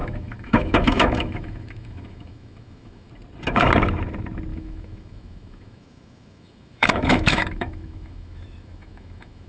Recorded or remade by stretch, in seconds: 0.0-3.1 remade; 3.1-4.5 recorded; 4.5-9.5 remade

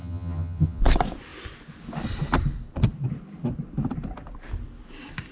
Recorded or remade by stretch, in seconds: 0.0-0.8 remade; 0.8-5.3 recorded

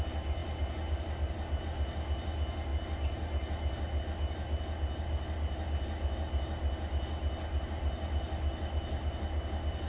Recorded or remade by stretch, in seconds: 0.0-9.9 recorded

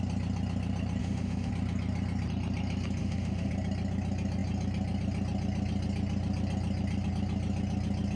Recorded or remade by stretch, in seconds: 0.0-1.0 recorded; 1.0-1.5 remade; 1.5-3.0 recorded; 3.0-3.5 remade; 3.5-8.2 recorded

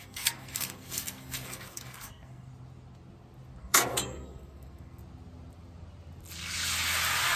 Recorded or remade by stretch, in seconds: 0.0-2.5 remade; 2.5-3.6 recorded; 3.6-5.0 remade; 5.0-7.4 recorded

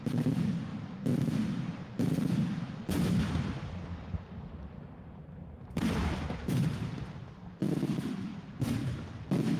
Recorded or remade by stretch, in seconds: 0.0-8.8 remade; 8.8-9.6 recorded